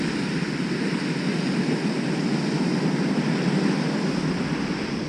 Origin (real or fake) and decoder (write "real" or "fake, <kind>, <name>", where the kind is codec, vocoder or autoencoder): real